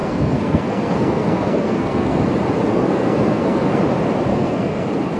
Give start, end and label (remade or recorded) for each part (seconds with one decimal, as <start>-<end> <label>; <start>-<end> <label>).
0.0-2.2 remade; 2.2-2.7 recorded; 2.7-3.8 remade; 3.8-4.3 recorded; 4.3-5.2 remade